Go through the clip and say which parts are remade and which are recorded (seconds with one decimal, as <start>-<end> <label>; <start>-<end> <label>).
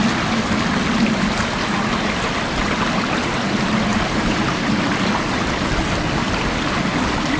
0.0-3.9 recorded; 3.9-5.1 remade; 5.1-7.4 recorded